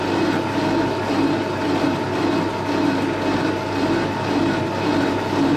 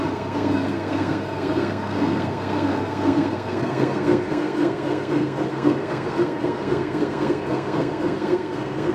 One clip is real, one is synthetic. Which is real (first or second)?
first